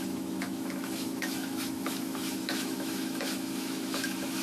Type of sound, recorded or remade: remade